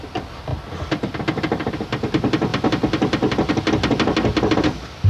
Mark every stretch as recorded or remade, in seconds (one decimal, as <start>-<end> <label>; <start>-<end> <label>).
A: 0.0-5.1 recorded